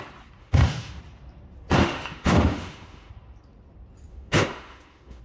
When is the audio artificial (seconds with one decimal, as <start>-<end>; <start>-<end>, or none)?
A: 0.4-1.0; 1.8-3.1; 4.1-5.2